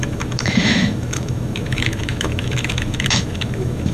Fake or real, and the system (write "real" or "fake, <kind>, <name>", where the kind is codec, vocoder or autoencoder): fake, autoencoder, DAC-VAE